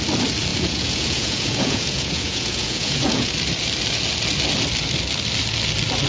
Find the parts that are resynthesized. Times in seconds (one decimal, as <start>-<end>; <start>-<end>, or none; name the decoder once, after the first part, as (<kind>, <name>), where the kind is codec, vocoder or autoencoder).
0.5-3.3 (vocoder, Vocos)

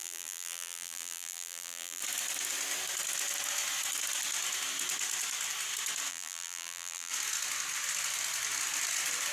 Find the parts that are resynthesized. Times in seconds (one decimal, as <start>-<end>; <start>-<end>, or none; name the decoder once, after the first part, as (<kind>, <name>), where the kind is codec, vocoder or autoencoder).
0.0-2.0 (vocoder, BigVGAN v2); 6.1-7.1

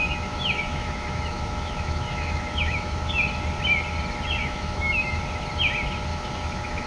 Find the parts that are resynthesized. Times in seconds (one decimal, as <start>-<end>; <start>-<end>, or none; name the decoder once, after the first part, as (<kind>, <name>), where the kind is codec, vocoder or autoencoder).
0.0-3.1 (autoencoder, DAC-VAE); 4.4-5.2; 6.1-6.9